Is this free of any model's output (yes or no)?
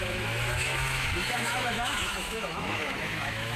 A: no